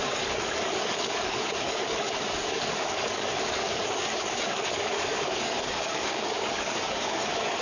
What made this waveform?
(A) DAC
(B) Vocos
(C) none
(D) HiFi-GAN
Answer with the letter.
A